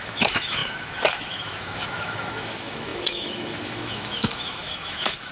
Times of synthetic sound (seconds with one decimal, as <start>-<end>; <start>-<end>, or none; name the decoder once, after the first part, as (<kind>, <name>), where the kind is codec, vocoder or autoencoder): 0.0-5.3 (autoencoder, DAC-VAE)